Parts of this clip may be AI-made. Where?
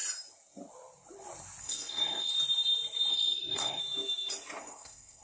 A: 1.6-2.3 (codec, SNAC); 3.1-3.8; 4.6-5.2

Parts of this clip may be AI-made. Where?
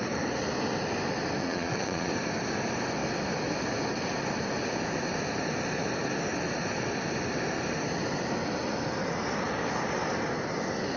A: 1.4-2.1 (vocoder, Vocos)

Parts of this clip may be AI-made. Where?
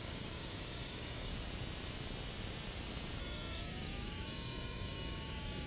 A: 0.0-1.3 (codec, DAC); 3.2-5.7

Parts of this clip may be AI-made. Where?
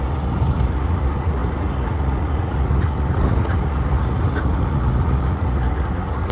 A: 0.0-6.3 (vocoder, Vocos)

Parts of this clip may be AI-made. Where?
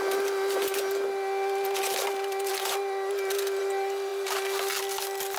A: none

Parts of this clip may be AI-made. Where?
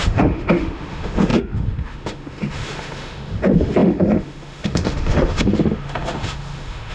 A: 0.0-6.9 (autoencoder, DAC-VAE)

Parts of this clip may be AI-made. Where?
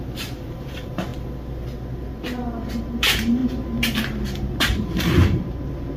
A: 0.0-1.1 (vocoder, BigVGAN v2); 2.8-6.0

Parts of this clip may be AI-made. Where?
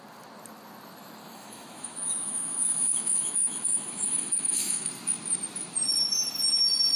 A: 1.2-4.9 (autoencoder, DAC-VAE)